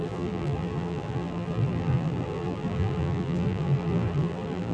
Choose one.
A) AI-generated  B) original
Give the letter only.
A